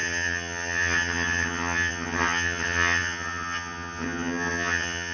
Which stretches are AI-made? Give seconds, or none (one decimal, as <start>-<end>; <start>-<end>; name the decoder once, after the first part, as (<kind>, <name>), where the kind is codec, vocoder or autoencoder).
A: 0.0-5.1 (vocoder, HiFi-GAN)